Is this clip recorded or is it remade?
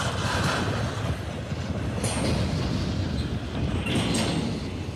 recorded